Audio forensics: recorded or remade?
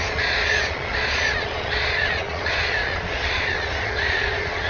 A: remade